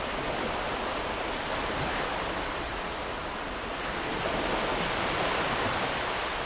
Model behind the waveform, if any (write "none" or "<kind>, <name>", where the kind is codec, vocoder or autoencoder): vocoder, BigVGAN v2